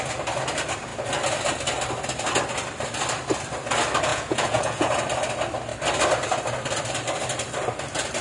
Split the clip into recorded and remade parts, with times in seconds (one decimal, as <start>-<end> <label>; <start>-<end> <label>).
0.0-4.1 recorded; 4.1-4.9 remade; 4.9-8.2 recorded